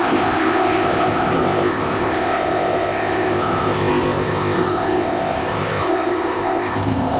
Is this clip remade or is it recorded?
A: remade